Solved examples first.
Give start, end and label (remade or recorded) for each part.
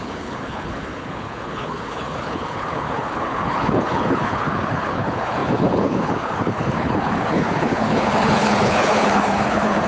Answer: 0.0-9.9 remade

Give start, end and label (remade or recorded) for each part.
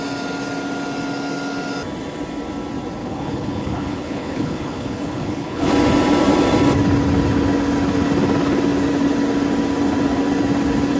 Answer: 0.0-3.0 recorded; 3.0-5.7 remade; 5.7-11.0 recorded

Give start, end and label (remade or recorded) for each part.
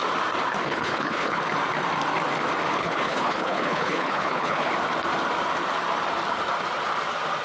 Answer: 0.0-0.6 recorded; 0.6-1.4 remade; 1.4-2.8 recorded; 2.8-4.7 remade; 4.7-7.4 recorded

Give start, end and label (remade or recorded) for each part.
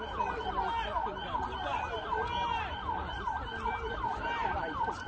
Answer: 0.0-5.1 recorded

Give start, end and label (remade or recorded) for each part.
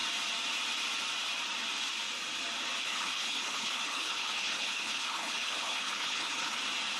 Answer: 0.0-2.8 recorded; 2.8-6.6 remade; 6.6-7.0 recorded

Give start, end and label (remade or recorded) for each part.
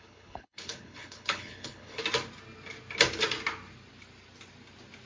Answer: 0.0-2.0 remade; 2.0-5.1 recorded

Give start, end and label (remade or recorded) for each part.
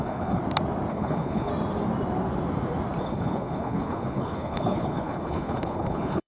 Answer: 0.0-0.4 remade; 0.4-0.9 recorded; 0.9-1.5 remade; 1.5-3.0 recorded; 3.0-6.3 remade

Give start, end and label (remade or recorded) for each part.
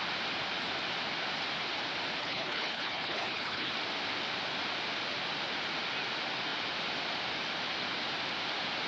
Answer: 0.0-2.2 recorded; 2.2-3.7 remade; 3.7-8.9 recorded